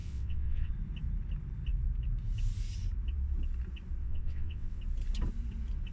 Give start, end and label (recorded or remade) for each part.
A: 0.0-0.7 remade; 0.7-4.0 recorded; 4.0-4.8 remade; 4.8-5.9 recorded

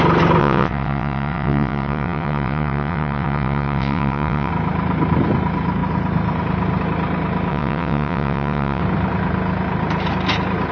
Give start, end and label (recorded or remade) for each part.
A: 0.0-0.4 recorded; 0.4-4.5 remade; 4.5-7.5 recorded; 7.5-8.8 remade; 8.8-10.7 recorded

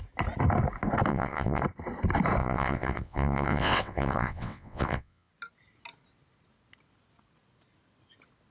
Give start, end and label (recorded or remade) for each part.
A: 0.0-1.1 recorded; 1.1-1.6 remade; 1.6-2.4 recorded; 2.4-5.3 remade; 5.3-8.5 recorded

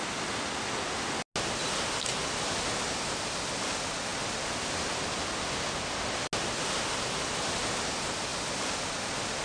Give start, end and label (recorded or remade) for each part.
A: 0.0-9.4 recorded

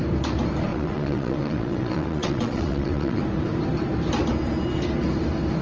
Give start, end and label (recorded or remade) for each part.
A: 0.0-0.7 recorded; 0.7-3.2 remade; 3.2-5.6 recorded

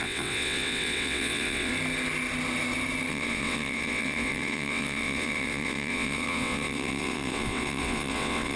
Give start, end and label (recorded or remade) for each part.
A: 0.0-1.7 remade; 1.7-3.1 recorded; 3.1-8.6 remade